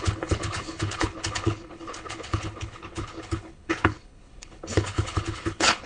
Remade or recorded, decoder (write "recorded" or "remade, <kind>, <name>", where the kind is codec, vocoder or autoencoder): remade, codec, HILCodec